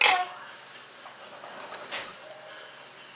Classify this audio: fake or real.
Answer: real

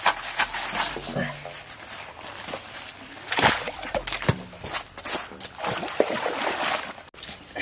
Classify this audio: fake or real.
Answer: real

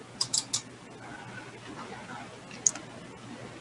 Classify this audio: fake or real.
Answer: real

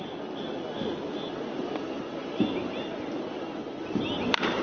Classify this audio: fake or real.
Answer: real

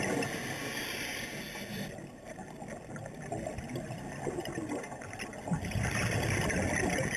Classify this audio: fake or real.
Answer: real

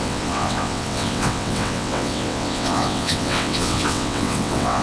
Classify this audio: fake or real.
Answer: fake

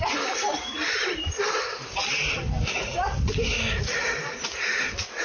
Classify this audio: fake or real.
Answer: real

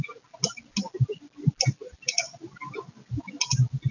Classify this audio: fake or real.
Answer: real